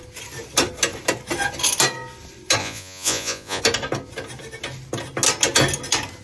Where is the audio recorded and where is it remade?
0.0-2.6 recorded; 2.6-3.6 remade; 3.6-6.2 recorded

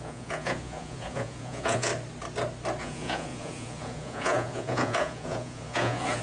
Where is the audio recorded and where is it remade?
0.0-1.9 remade; 1.9-2.8 recorded; 2.8-6.2 remade